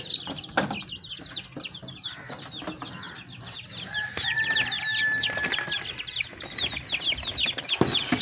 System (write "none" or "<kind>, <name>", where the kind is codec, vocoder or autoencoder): none